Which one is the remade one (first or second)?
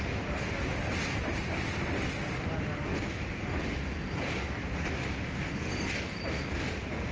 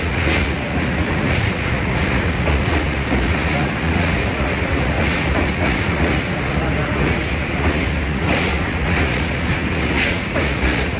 second